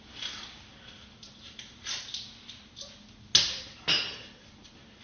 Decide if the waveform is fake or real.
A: real